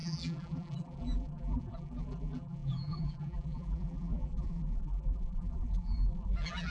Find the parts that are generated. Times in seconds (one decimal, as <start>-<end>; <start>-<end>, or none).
0.0-6.7